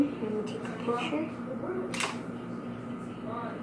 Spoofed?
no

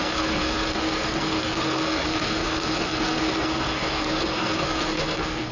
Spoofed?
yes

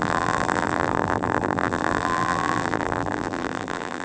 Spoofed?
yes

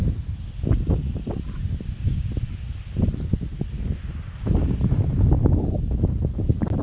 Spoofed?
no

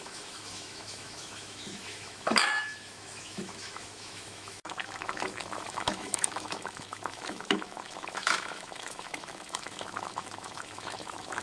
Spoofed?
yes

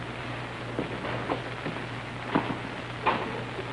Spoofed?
no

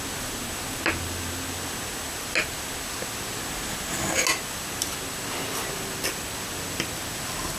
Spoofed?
no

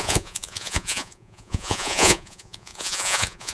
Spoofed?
yes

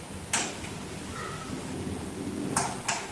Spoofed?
no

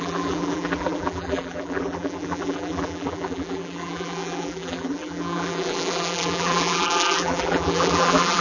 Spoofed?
yes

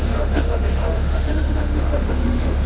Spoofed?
yes